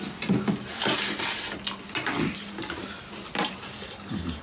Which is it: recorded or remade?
recorded